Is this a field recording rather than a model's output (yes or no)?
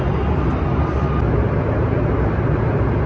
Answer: yes